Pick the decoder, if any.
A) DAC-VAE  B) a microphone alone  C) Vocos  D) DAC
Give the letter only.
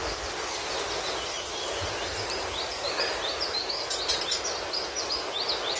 B